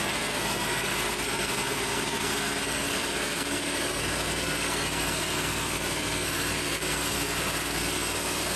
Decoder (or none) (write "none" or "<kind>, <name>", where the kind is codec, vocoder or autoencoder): codec, SNAC